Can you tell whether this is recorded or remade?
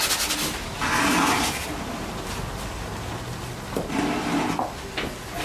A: recorded